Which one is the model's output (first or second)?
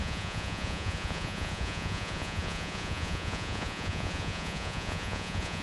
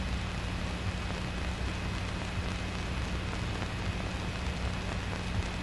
first